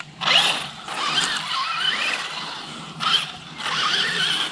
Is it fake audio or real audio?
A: real